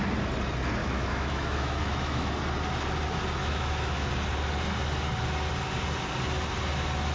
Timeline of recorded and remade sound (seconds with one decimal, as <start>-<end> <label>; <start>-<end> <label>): 0.0-0.8 recorded; 0.8-2.3 remade; 2.3-3.4 recorded; 3.4-4.1 remade; 4.1-7.1 recorded